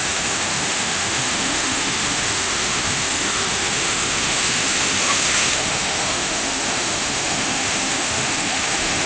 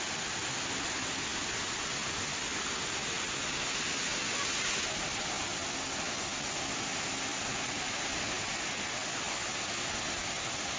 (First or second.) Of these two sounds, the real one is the second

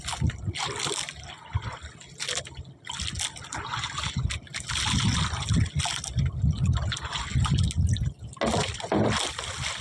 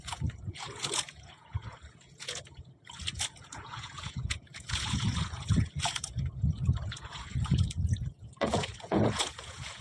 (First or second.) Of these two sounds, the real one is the first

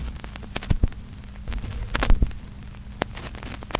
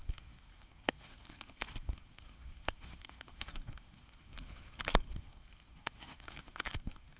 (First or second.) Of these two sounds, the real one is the first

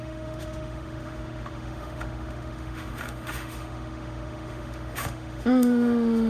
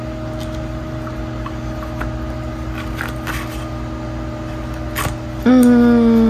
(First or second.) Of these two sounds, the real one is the second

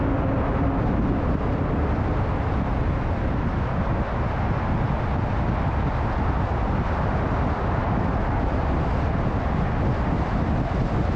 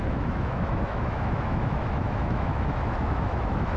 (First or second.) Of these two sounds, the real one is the first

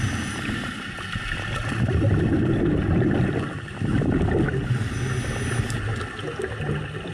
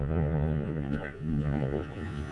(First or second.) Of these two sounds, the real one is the first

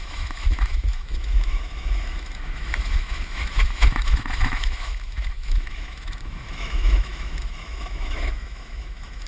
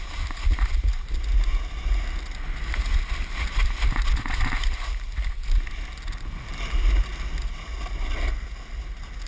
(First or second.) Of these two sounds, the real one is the second